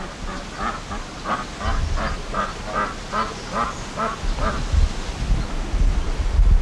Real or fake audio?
real